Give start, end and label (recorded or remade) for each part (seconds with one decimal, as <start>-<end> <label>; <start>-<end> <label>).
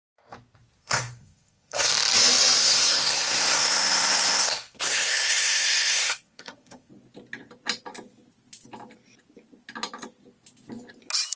0.0-0.8 recorded; 0.8-1.9 remade; 1.9-2.6 recorded; 2.6-6.9 remade; 6.9-11.4 recorded